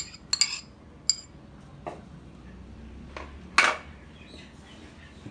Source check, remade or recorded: recorded